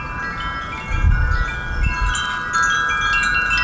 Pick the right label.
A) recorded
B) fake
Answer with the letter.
A